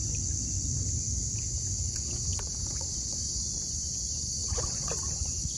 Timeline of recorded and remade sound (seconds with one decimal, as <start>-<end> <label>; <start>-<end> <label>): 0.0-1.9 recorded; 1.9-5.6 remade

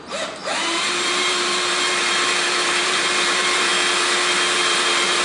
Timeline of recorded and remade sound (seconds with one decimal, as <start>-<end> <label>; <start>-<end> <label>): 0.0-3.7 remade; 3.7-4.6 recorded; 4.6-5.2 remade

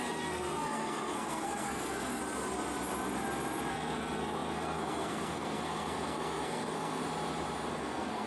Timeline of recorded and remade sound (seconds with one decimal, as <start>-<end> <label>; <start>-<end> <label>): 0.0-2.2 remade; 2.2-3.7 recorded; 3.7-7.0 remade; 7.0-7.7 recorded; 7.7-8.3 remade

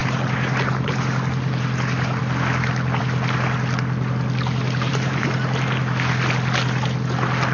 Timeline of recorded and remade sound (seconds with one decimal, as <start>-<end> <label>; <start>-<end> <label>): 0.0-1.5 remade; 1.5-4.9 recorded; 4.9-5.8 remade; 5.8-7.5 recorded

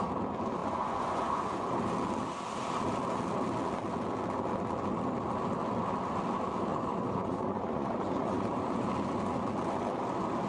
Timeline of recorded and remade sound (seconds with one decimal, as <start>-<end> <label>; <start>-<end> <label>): 0.0-0.6 recorded; 0.6-1.7 remade; 1.7-6.7 recorded; 6.7-8.9 remade; 8.9-10.5 recorded